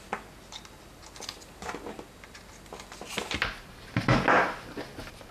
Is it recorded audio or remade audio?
recorded